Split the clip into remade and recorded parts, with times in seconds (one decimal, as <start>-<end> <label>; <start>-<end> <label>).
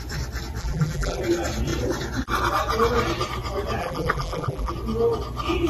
0.0-0.6 recorded; 0.6-1.2 remade; 1.2-3.8 recorded; 3.8-4.7 remade; 4.7-5.7 recorded